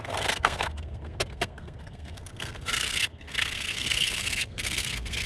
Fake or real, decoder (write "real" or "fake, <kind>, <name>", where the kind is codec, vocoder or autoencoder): fake, codec, SNAC